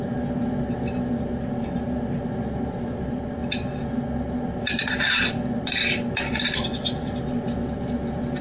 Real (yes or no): yes